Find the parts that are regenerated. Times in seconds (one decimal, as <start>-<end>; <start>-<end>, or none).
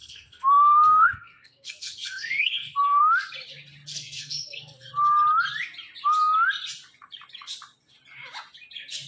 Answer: 0.0-3.0; 3.9-4.9